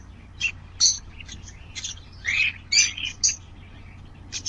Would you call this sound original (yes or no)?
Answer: yes